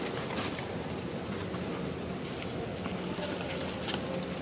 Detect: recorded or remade recorded